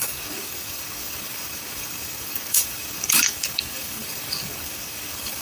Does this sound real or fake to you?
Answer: fake